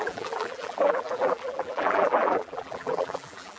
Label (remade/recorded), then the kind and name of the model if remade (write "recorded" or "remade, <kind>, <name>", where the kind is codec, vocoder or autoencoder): remade, vocoder, BigVGAN v2